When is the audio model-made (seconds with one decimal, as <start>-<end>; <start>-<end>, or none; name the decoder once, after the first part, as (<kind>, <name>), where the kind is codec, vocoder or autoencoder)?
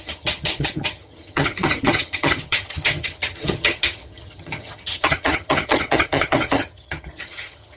0.0-7.8 (vocoder, HiFi-GAN)